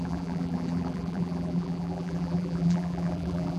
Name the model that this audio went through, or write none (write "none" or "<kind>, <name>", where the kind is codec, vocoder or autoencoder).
vocoder, BigVGAN v2